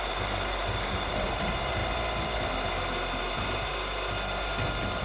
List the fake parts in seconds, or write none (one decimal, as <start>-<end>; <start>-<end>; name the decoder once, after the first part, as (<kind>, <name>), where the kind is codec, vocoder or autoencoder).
0.0-1.8 (vocoder, BigVGAN v2)